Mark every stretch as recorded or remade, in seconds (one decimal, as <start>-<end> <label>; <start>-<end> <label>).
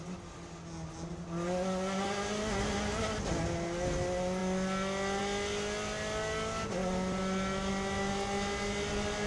0.0-9.3 recorded